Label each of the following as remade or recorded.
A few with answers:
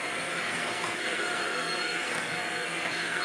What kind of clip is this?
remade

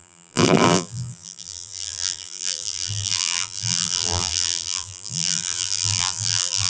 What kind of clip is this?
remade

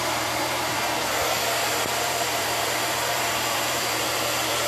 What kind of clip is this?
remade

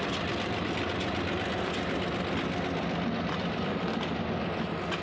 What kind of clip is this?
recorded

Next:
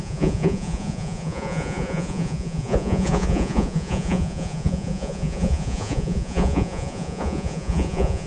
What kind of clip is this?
remade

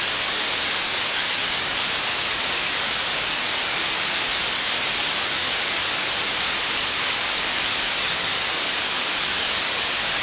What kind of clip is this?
remade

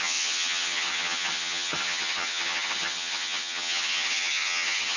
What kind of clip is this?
remade